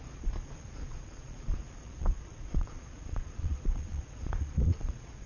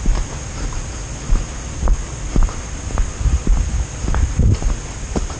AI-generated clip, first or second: first